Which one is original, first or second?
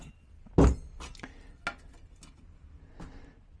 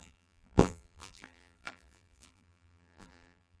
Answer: first